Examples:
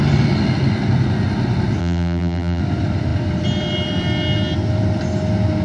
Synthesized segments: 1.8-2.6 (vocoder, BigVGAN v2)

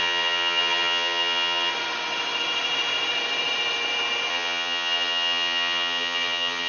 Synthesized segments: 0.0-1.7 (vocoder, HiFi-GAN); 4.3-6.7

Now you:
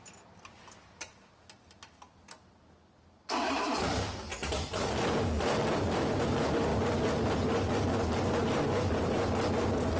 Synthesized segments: none

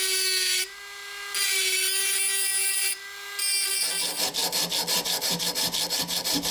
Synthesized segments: none

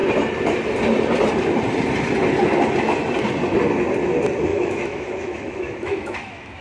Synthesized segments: 4.5-6.6 (autoencoder, DAC-VAE)

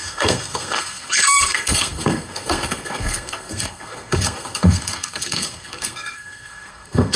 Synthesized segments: 0.0-7.2 (codec, SNAC)